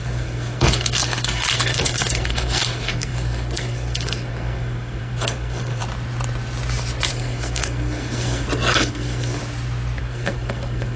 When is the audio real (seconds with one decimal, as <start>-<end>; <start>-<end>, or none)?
5.8-7.1; 9.4-10.0